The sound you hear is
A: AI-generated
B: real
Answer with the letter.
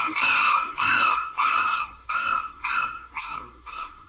A